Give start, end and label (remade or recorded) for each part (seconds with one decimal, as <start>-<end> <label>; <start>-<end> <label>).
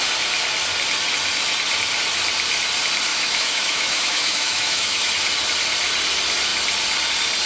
0.0-3.1 recorded; 3.1-5.1 remade; 5.1-7.5 recorded